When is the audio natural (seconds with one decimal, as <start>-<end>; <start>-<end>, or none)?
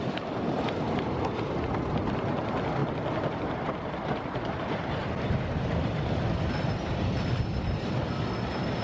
0.0-8.8